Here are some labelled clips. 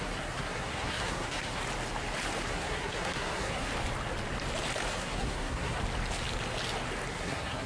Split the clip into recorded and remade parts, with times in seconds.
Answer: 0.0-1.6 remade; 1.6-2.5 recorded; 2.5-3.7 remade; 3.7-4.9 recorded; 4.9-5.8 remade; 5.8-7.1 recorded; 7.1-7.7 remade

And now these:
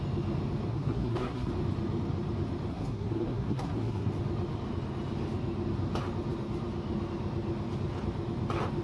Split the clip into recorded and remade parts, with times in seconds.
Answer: 0.0-0.7 recorded; 0.7-1.5 remade; 1.5-2.7 recorded; 2.7-4.1 remade; 4.1-8.8 recorded

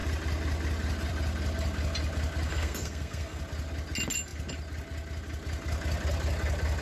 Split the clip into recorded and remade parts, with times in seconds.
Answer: 0.0-2.5 recorded; 2.5-3.4 remade; 3.4-6.8 recorded

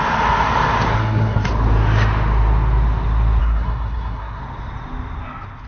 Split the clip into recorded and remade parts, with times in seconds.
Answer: 0.0-0.9 recorded; 0.9-1.5 remade; 1.5-3.4 recorded; 3.4-4.4 remade; 4.4-5.7 recorded

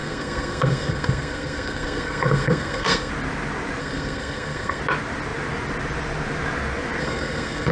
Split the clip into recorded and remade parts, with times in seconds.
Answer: 0.0-3.1 remade; 3.1-3.8 recorded; 3.8-4.8 remade; 4.8-7.0 recorded; 7.0-7.7 remade